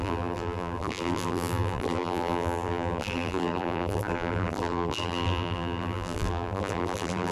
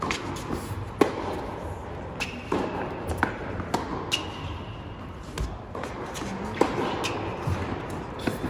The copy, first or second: first